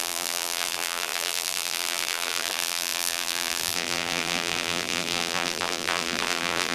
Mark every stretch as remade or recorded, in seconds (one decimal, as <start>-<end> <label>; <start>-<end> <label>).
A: 0.0-6.7 remade